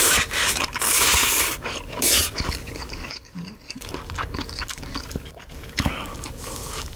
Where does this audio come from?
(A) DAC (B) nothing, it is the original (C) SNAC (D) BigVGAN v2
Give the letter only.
A